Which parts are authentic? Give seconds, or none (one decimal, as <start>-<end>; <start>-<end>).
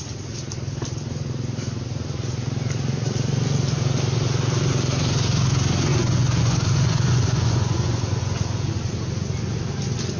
0.0-5.9; 8.7-10.2